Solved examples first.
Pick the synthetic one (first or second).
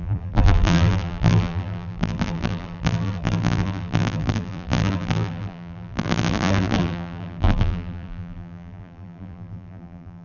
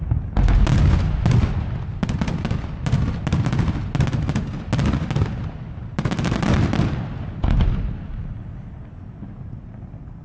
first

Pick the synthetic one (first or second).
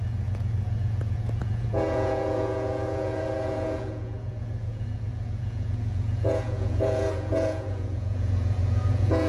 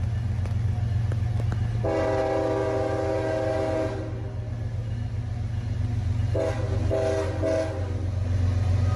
first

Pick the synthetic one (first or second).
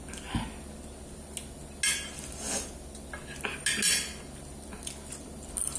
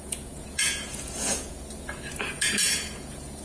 second